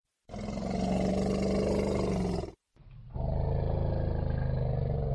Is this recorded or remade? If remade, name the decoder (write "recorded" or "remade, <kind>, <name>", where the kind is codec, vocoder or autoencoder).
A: recorded